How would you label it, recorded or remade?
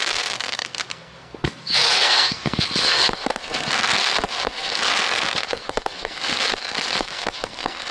remade